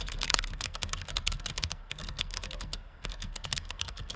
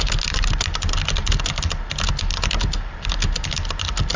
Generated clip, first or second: first